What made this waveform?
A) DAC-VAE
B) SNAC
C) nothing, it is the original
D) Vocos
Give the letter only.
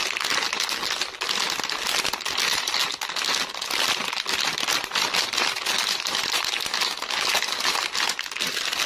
C